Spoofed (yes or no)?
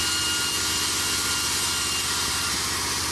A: no